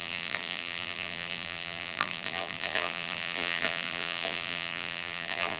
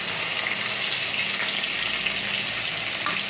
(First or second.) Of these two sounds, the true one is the second